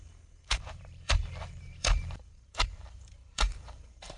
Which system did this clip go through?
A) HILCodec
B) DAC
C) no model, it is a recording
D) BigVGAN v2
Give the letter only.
D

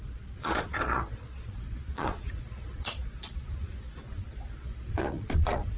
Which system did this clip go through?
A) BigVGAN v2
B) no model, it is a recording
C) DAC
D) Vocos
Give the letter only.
D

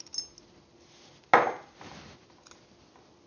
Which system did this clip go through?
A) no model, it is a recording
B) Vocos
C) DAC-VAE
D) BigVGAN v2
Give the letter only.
A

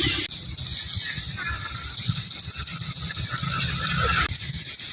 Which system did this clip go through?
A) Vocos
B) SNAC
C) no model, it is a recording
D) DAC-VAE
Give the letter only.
C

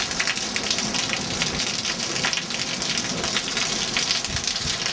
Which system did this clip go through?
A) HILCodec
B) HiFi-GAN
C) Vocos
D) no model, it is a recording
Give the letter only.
D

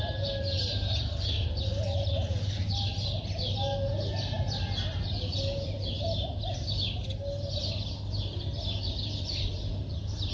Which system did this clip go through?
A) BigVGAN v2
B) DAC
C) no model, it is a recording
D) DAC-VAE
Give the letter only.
C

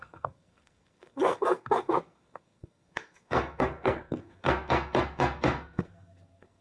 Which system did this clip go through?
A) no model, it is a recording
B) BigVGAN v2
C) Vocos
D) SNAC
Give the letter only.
D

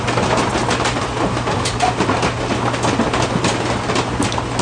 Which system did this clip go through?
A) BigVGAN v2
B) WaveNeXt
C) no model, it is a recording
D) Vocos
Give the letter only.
C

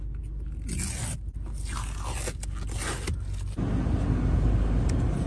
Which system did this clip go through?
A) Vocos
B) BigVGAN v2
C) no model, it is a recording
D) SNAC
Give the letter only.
C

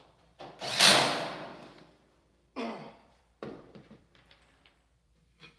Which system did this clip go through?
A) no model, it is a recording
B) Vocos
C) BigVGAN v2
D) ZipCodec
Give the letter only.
C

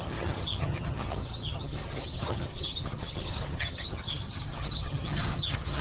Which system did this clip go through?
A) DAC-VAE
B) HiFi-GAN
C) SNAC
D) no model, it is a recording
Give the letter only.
B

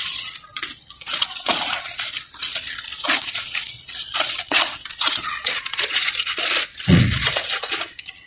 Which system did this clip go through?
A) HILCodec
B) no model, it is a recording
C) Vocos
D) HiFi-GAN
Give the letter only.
C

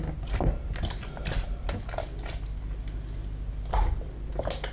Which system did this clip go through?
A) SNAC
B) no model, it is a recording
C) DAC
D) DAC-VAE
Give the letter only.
B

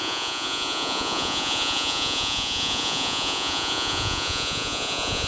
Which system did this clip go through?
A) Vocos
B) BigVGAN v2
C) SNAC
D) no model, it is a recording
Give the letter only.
A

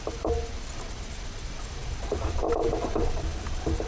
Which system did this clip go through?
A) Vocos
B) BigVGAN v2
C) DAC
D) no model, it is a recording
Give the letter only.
D